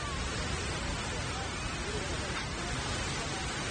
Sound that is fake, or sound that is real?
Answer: real